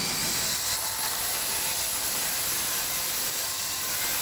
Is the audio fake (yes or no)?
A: no